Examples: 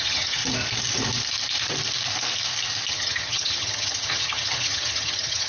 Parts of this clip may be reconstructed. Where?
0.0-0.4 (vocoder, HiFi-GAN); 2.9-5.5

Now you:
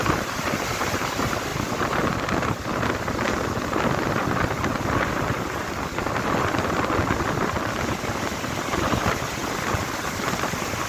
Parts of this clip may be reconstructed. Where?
none

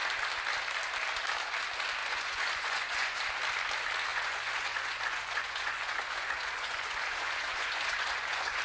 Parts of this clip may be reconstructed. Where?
2.0-3.2 (vocoder, Vocos); 4.1-8.6

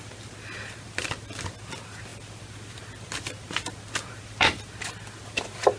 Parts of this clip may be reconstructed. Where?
none

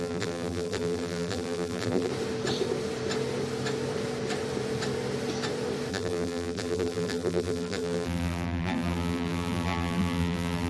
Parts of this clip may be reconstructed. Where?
0.0-2.1 (vocoder, BigVGAN v2); 5.9-10.7

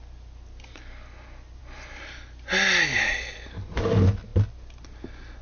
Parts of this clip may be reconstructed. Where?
none

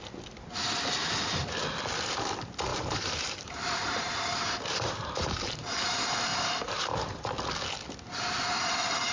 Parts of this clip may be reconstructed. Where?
2.7-5.7 (vocoder, BigVGAN v2); 6.3-7.3